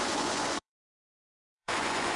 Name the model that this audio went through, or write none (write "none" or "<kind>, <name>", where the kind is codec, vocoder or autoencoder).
vocoder, Vocos